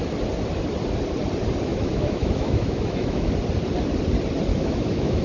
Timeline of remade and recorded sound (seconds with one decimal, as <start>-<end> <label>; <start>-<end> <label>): 0.0-1.7 recorded; 1.7-3.3 remade; 3.3-4.5 recorded; 4.5-5.2 remade